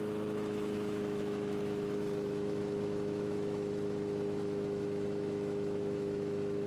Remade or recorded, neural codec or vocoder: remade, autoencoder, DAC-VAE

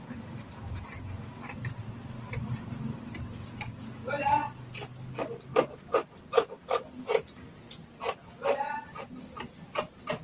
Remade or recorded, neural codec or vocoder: recorded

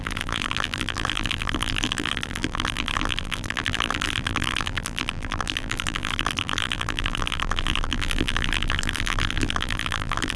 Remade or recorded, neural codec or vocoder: remade, vocoder, BigVGAN v2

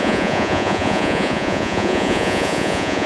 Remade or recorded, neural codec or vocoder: remade, vocoder, Vocos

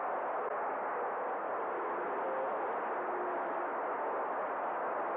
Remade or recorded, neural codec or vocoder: recorded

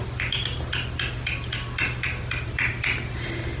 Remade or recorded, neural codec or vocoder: recorded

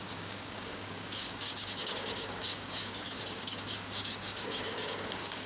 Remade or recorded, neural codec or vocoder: remade, codec, DAC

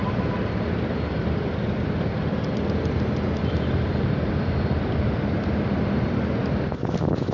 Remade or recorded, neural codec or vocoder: recorded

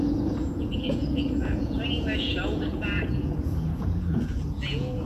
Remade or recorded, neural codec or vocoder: remade, vocoder, Vocos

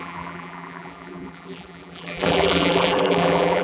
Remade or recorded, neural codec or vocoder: remade, vocoder, BigVGAN v2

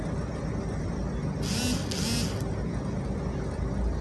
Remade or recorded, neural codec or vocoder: recorded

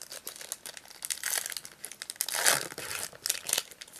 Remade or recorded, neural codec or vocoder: recorded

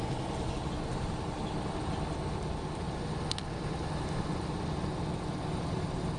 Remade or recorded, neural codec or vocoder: recorded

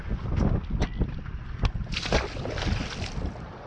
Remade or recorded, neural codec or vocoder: recorded